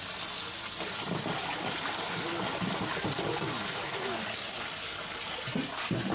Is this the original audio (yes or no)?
yes